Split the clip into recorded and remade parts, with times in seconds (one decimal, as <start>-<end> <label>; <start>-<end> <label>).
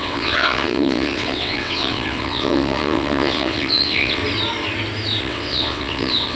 0.0-4.2 remade; 4.2-5.2 recorded; 5.2-6.4 remade